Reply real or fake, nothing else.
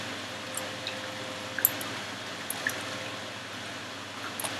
real